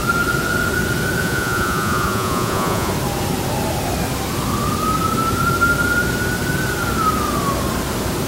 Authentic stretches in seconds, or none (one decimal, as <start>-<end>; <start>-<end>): 0.0-1.2; 2.9-8.3